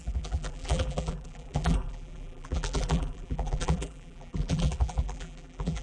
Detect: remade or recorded remade